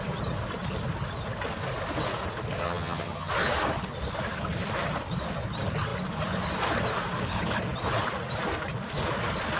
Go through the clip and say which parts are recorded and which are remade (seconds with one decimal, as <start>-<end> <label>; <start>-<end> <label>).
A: 0.0-2.6 recorded; 2.6-3.3 remade; 3.3-9.6 recorded